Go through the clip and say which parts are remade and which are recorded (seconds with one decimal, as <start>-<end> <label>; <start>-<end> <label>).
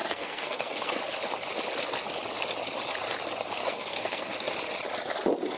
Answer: 0.0-1.0 remade; 1.0-3.6 recorded; 3.6-4.3 remade; 4.3-5.6 recorded